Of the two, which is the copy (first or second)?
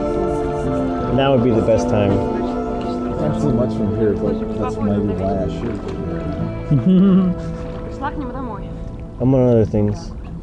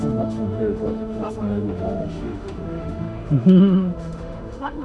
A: second